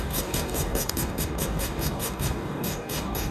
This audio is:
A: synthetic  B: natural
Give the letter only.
A